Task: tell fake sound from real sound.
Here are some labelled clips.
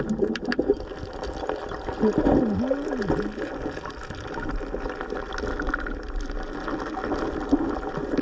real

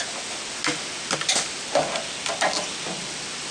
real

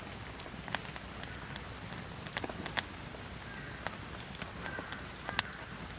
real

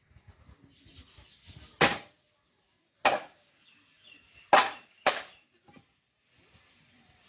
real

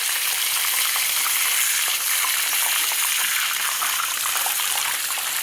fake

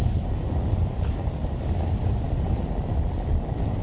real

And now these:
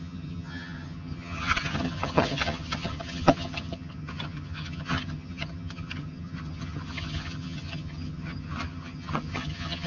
fake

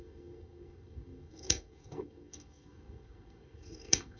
fake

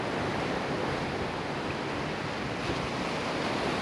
fake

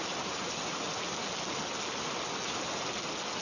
real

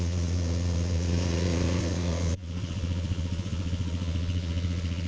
fake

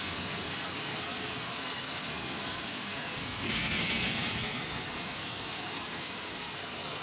fake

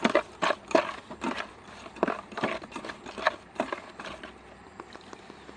real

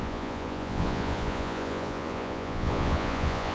fake